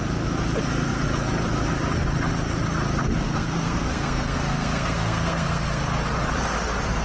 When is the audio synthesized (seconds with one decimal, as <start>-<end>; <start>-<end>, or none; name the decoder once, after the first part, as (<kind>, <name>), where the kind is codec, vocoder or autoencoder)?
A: 3.0-5.8 (codec, SNAC)